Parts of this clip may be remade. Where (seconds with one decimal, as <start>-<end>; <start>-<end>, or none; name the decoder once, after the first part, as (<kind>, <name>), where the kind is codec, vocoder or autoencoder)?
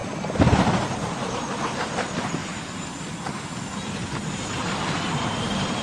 0.9-2.4 (vocoder, BigVGAN v2); 4.3-5.8